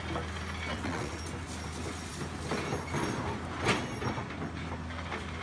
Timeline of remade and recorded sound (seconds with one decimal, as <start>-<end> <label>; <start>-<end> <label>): 0.0-0.7 recorded; 0.7-1.2 remade; 1.2-5.4 recorded